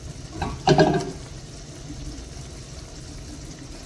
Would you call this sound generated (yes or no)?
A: no